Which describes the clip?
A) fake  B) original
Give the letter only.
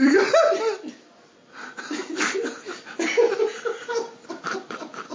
B